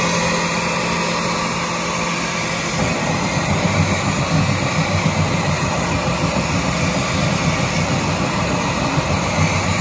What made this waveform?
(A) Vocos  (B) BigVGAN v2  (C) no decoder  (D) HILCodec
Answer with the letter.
C